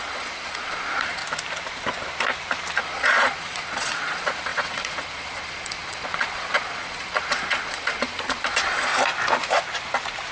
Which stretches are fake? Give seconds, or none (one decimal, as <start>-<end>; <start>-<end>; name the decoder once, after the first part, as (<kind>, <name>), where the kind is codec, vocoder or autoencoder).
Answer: 0.0-1.2 (vocoder, Vocos); 2.8-8.9